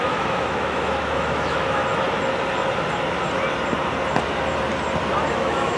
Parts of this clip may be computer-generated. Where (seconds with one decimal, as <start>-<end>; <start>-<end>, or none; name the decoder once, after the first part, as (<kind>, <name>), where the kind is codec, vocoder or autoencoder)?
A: 0.0-1.8 (autoencoder, DAC-VAE); 5.3-5.8